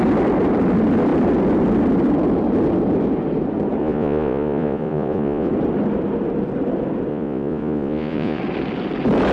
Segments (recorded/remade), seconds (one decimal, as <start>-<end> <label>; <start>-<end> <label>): 0.0-3.8 recorded; 3.8-5.5 remade; 5.5-7.1 recorded; 7.1-8.4 remade; 8.4-9.3 recorded